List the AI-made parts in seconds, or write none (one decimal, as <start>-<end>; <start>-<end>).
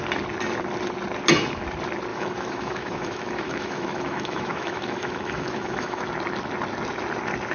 2.1-6.0